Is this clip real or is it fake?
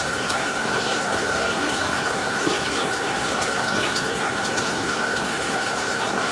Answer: fake